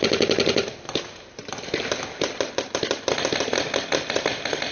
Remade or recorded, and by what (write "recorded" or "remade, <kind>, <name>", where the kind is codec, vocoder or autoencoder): recorded